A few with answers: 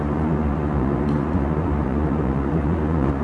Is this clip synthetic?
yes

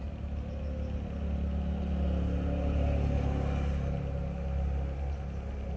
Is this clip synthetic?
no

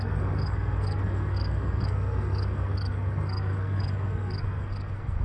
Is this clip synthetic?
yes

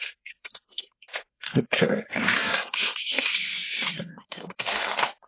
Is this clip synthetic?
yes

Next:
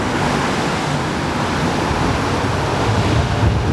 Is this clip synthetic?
no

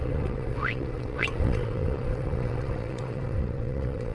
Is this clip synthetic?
yes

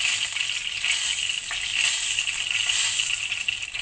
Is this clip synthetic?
no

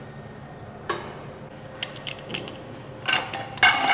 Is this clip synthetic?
no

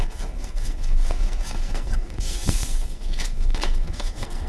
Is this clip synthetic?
yes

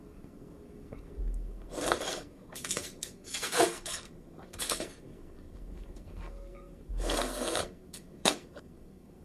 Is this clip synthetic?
yes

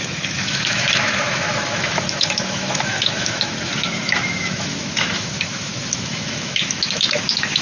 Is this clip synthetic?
yes